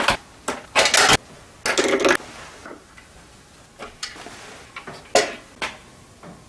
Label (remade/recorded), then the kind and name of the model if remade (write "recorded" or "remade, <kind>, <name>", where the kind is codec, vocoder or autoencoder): recorded